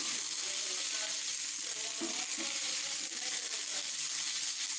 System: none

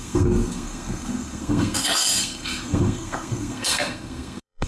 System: codec, SNAC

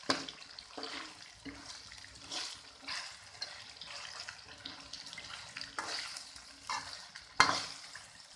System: none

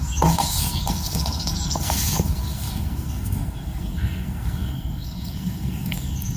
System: codec, SNAC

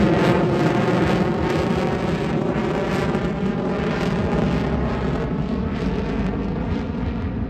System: none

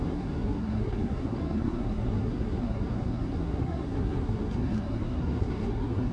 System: codec, SNAC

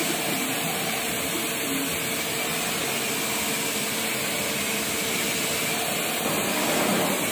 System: none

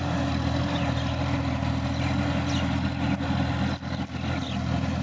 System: none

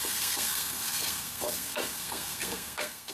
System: codec, SNAC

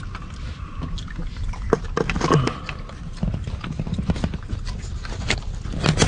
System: none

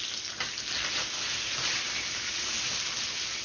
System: none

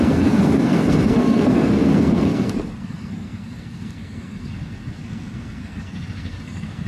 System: codec, SNAC